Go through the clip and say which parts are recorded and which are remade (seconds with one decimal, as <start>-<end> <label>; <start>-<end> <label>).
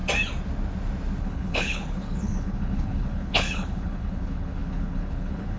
0.0-1.2 recorded; 1.2-5.6 remade